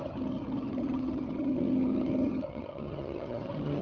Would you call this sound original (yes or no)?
no